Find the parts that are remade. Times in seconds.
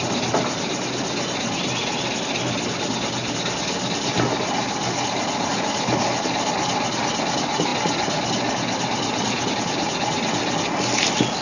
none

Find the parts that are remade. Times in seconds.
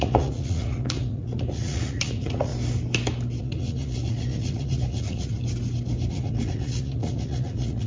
0.0-2.5 (vocoder, Vocos); 3.4-5.4; 6.1-7.9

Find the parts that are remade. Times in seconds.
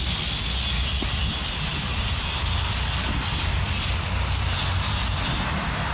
1.7-5.1 (vocoder, BigVGAN v2)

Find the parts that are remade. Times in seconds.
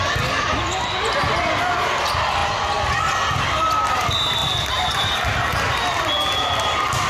none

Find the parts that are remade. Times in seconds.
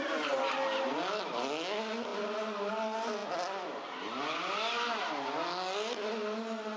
none